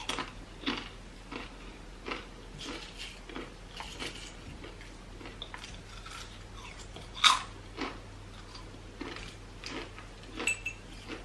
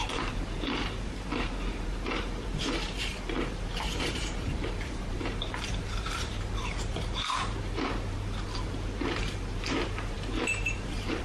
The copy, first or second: second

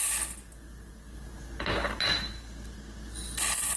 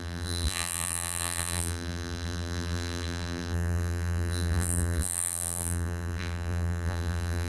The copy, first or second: second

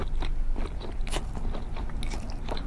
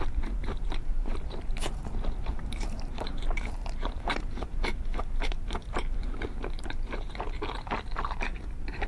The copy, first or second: second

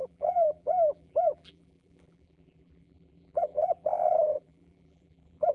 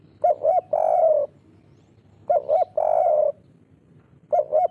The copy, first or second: first